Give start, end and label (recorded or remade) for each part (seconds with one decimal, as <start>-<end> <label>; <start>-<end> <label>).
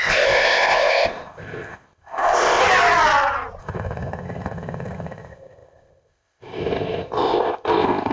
0.0-2.6 remade; 2.6-3.6 recorded; 3.6-8.1 remade